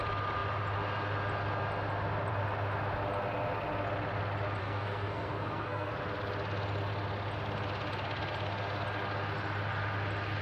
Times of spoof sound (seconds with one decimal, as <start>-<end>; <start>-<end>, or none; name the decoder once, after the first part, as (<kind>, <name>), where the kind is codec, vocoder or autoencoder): 4.6-5.9 (codec, SNAC)